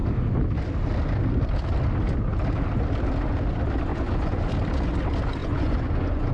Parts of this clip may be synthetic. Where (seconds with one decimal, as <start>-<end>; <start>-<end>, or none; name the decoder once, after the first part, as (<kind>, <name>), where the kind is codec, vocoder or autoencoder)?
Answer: 3.9-4.4 (vocoder, Vocos); 5.4-6.3